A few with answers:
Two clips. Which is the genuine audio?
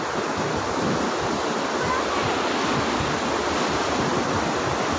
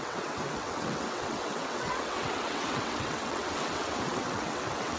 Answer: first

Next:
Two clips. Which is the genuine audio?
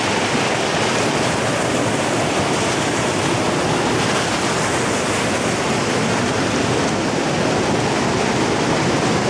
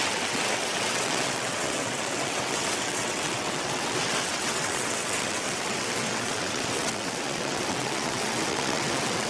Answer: first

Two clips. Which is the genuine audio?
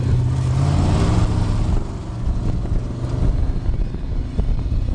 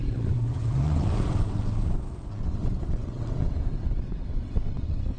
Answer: first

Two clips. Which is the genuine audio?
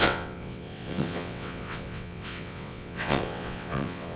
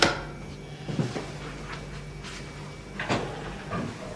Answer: second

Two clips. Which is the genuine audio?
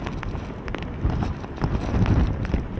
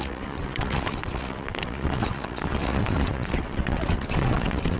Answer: first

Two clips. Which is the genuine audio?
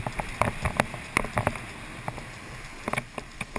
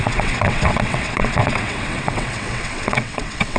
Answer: first